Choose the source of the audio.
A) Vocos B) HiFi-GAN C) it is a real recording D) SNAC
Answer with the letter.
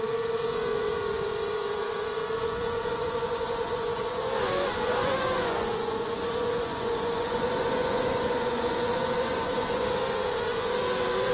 A